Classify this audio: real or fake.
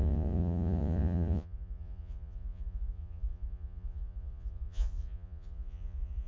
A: fake